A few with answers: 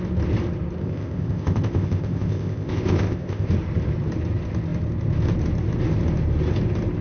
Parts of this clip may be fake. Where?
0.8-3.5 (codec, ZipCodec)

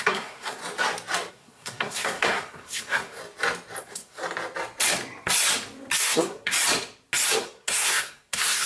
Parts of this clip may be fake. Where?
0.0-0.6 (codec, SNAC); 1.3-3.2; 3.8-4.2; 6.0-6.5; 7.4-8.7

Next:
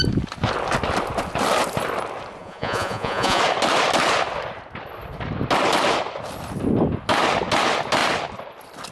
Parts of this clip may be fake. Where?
2.4-3.4 (vocoder, Vocos)

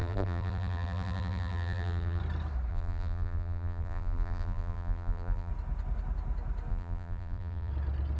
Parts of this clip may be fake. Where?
0.0-2.2 (vocoder, BigVGAN v2); 2.7-5.5; 6.7-7.7

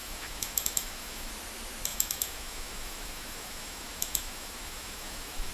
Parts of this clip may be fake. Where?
0.0-1.3 (autoencoder, DAC-VAE); 1.9-5.5

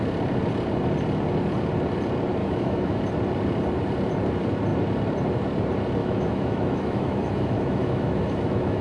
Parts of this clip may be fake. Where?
2.4-3.0 (autoencoder, DAC-VAE); 6.0-8.8

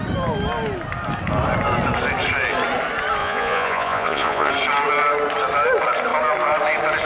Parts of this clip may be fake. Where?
3.2-4.5 (vocoder, Vocos)